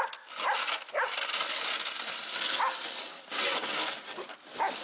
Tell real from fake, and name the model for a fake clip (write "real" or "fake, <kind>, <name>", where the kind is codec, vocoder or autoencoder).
real